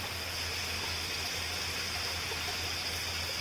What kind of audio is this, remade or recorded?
recorded